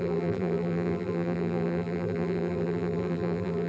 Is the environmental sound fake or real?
fake